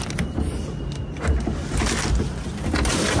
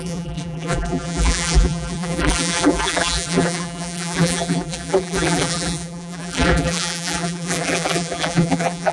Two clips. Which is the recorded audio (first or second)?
first